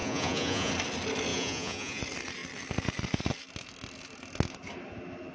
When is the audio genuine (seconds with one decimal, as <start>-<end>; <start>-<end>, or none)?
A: 0.7-1.3; 2.0-5.3